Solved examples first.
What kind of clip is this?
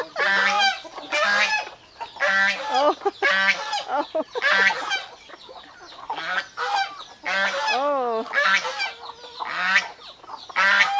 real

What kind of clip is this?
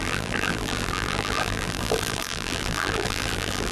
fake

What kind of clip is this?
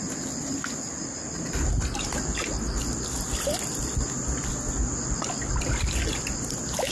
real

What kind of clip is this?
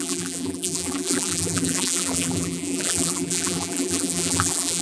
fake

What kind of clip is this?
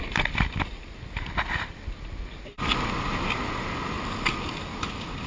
real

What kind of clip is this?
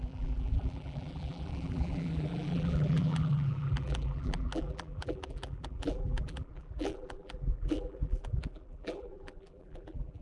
fake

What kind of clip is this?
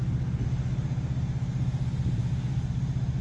real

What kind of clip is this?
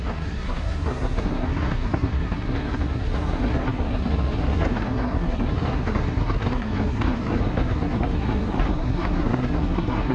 fake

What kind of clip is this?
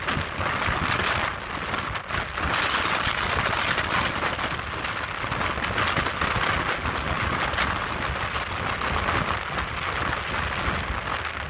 real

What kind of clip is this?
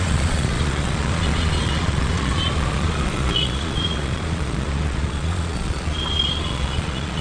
fake